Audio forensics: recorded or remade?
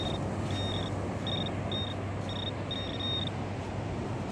recorded